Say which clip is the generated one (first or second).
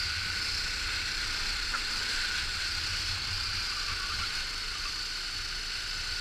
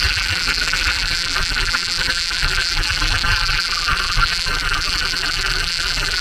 second